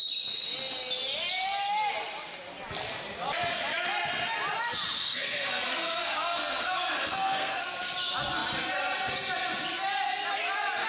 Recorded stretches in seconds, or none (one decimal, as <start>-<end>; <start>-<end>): 0.0-5.0; 7.7-10.9